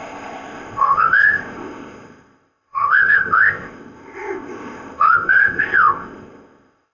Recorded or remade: remade